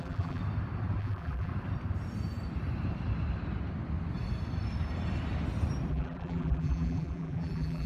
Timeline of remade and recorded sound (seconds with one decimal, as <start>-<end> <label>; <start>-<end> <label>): 0.0-0.4 remade; 0.4-1.0 recorded; 1.0-1.5 remade; 1.5-5.9 recorded; 5.9-7.9 remade